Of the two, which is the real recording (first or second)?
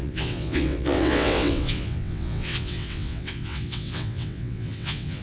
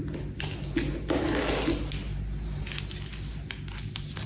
second